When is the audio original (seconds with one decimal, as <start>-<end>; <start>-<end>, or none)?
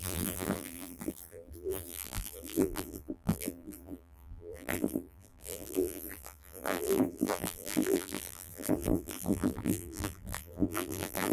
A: none